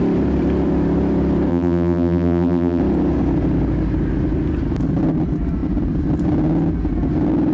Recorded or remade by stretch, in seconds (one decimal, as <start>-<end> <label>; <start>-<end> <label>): 0.0-1.5 recorded; 1.5-2.8 remade; 2.8-7.5 recorded